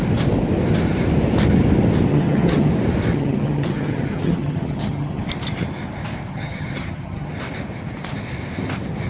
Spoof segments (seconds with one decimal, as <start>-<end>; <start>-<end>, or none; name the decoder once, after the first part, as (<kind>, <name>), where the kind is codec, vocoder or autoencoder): 2.1-2.7 (vocoder, HiFi-GAN); 3.1-5.2; 6.3-7.3